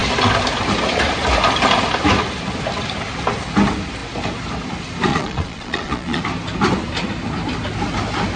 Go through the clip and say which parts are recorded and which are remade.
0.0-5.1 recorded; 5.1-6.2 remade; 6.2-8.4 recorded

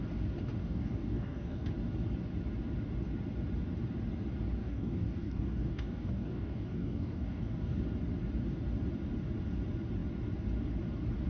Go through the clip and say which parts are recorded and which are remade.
0.0-0.6 recorded; 0.6-1.7 remade; 1.7-4.6 recorded; 4.6-7.8 remade; 7.8-11.3 recorded

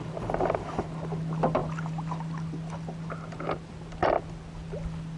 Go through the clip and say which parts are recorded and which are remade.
0.0-5.2 recorded

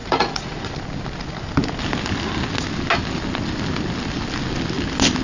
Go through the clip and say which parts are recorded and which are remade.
0.0-0.7 remade; 0.7-5.2 recorded

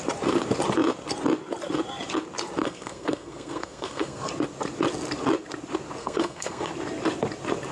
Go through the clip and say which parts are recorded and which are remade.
0.0-2.6 recorded; 2.6-4.3 remade; 4.3-6.0 recorded; 6.0-6.7 remade; 6.7-7.7 recorded